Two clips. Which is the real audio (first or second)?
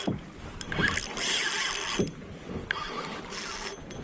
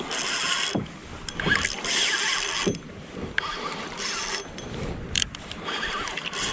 first